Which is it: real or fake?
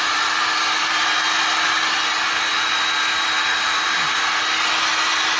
fake